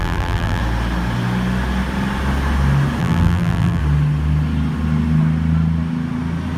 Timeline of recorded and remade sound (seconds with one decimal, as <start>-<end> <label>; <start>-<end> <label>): 0.0-0.6 remade; 0.6-3.0 recorded; 3.0-3.8 remade; 3.8-6.6 recorded